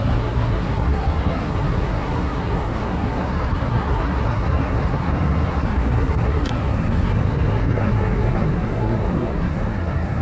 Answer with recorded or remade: remade